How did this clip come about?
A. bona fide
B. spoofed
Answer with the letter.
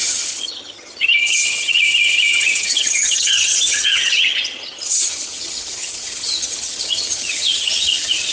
B